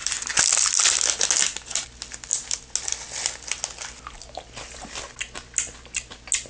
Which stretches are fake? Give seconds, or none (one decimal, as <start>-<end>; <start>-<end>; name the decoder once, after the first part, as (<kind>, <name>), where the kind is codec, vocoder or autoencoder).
none